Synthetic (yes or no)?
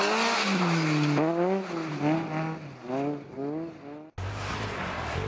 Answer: no